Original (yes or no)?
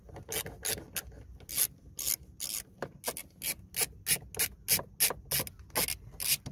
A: yes